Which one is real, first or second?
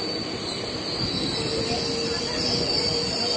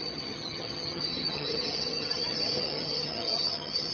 first